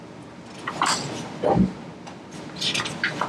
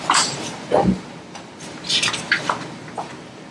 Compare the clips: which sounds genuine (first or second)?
first